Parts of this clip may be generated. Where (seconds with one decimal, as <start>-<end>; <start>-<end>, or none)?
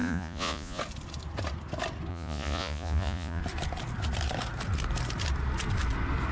0.0-0.8; 2.1-3.4